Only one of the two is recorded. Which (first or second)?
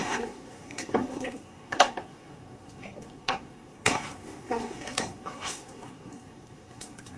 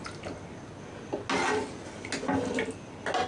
second